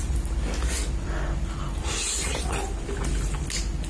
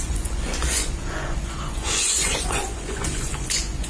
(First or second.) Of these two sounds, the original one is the first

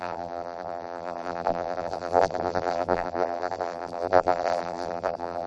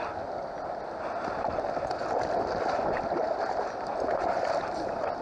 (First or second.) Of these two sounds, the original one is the second